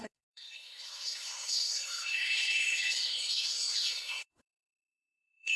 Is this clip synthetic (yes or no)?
yes